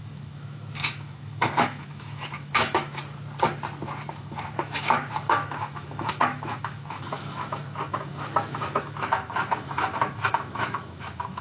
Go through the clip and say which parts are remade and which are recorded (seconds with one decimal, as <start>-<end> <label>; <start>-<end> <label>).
0.0-3.0 remade; 3.0-4.1 recorded; 4.1-11.4 remade